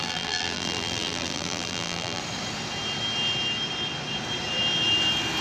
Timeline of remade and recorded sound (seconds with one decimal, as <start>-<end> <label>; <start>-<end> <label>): 0.0-2.2 remade; 2.2-5.4 recorded